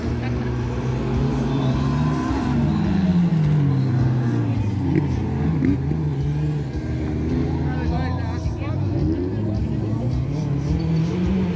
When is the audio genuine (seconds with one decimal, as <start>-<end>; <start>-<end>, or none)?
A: 0.0-11.6